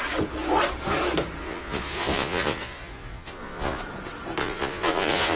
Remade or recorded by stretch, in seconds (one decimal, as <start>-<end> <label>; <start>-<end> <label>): 0.0-1.4 recorded; 1.4-3.8 remade; 3.8-4.4 recorded; 4.4-5.4 remade